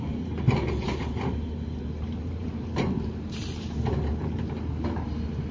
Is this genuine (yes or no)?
no